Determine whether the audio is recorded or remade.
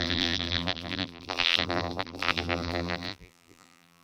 remade